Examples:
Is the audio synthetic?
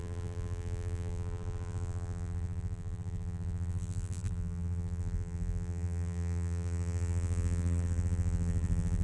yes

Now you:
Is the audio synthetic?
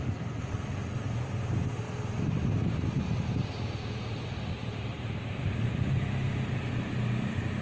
yes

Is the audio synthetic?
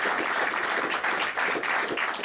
no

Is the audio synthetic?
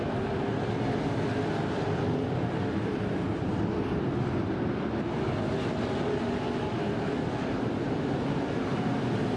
yes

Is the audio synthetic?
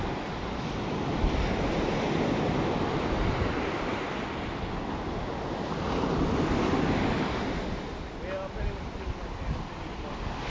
no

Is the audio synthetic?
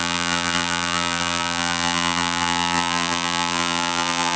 yes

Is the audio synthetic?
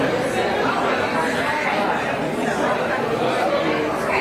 yes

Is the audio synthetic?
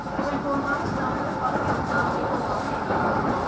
no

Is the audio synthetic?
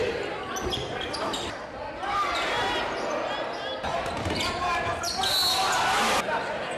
no